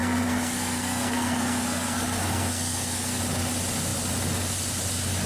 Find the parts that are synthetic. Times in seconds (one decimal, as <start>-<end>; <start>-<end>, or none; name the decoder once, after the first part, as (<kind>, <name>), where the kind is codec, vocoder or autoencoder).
0.0-3.2 (codec, SNAC)